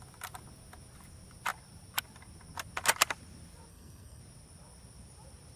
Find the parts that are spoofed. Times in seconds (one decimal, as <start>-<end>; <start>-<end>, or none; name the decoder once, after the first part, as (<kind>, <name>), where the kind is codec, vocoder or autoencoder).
3.7-4.2 (codec, SNAC)